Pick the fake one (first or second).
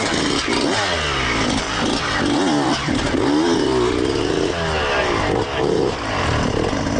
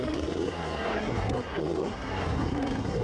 second